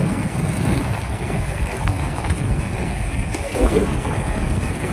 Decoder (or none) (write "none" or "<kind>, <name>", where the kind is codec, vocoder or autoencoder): codec, SNAC